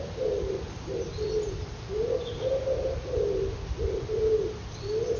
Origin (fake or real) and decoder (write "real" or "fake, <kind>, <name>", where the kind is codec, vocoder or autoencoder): real